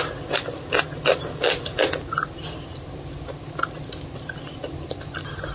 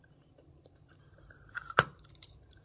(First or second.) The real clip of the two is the first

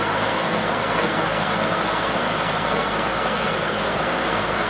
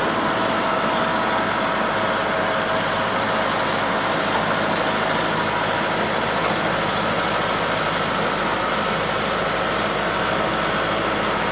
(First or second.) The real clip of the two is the second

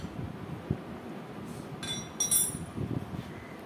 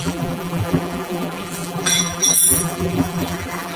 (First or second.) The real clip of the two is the first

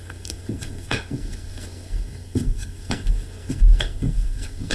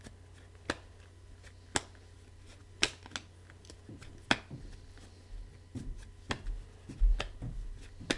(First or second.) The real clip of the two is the second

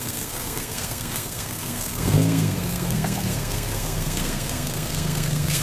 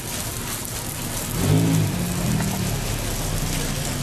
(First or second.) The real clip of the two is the second